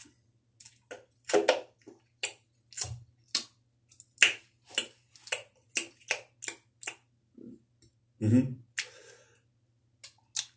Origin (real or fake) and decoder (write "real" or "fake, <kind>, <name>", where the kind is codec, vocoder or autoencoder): real